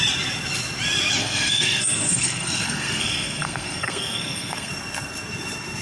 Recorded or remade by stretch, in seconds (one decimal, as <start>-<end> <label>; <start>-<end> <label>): 0.0-1.2 recorded; 1.2-4.7 remade; 4.7-5.8 recorded